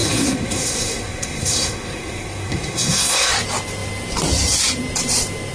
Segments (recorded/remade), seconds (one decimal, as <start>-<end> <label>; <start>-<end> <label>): 0.0-3.3 remade; 3.3-5.5 recorded